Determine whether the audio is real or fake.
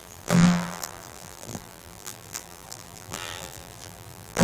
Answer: fake